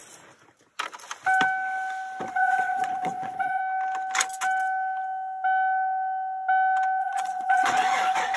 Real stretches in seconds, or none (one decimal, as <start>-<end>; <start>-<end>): 0.0-2.3; 3.6-7.0